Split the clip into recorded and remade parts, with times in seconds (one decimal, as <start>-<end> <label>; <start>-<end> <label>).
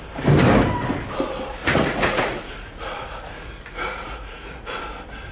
0.0-1.6 recorded; 1.6-4.8 remade; 4.8-5.3 recorded